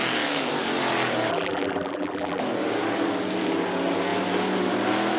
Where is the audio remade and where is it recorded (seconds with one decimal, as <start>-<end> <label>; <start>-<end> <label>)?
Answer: 0.0-1.3 recorded; 1.3-2.4 remade; 2.4-5.2 recorded